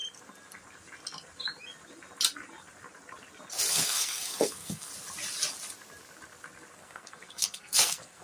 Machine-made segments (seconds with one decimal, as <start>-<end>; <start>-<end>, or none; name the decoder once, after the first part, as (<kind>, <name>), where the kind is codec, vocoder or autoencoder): 3.7-4.9 (codec, SNAC); 6.7-8.2